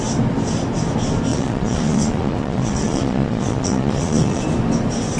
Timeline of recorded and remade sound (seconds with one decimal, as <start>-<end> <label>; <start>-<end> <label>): 0.0-1.3 recorded; 1.3-4.4 remade; 4.4-5.2 recorded